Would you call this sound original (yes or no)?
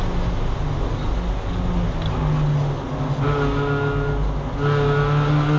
yes